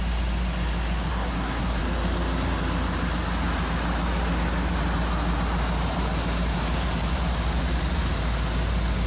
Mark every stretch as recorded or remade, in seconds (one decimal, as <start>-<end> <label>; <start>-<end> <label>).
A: 0.0-1.1 recorded; 1.1-1.8 remade; 1.8-9.1 recorded